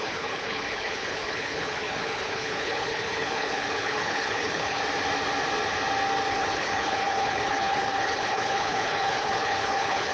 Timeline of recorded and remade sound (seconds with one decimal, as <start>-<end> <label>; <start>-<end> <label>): 0.0-4.8 remade; 4.8-6.3 recorded; 6.3-10.1 remade